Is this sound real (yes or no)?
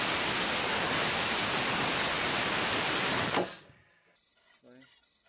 yes